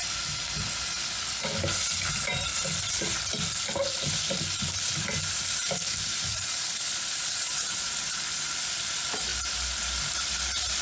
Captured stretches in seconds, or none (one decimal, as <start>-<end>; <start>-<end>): 0.0-6.3; 7.9-10.8